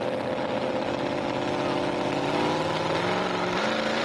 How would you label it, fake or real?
real